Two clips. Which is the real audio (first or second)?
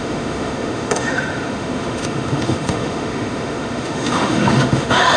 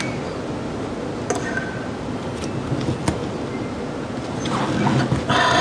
second